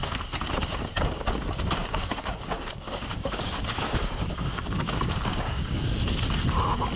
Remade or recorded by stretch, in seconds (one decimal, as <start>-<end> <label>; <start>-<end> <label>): 0.0-1.8 recorded; 1.8-6.0 remade; 6.0-7.0 recorded